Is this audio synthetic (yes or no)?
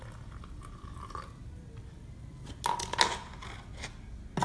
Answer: no